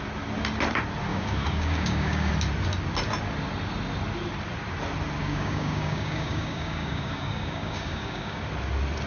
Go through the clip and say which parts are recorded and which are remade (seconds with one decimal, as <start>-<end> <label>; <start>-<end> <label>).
0.0-1.1 recorded; 1.1-2.3 remade; 2.3-5.2 recorded; 5.2-8.4 remade; 8.4-9.1 recorded

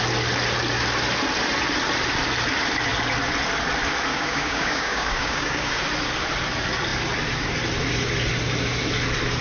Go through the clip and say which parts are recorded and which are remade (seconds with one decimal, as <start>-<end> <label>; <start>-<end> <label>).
0.0-4.1 recorded; 4.1-5.8 remade; 5.8-9.4 recorded

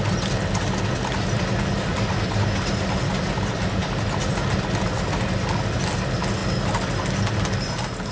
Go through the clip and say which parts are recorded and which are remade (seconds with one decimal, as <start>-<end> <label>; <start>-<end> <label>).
0.0-8.1 recorded

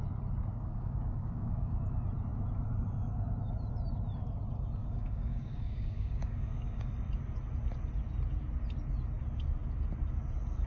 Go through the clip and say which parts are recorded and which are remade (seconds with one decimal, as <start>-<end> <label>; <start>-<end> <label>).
0.0-0.5 recorded; 0.5-1.8 remade; 1.8-4.8 recorded; 4.8-6.9 remade; 6.9-10.7 recorded

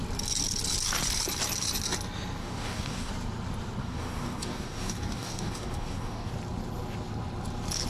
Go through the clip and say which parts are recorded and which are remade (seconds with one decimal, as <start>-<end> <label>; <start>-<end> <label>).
0.0-2.4 recorded; 2.4-3.1 remade; 3.1-3.8 recorded; 3.8-6.3 remade; 6.3-7.9 recorded

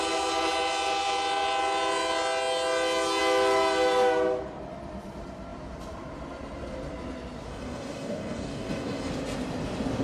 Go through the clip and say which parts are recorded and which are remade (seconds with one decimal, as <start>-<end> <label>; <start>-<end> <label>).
0.0-7.5 recorded; 7.5-9.1 remade; 9.1-10.0 recorded